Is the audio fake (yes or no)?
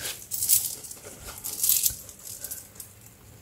no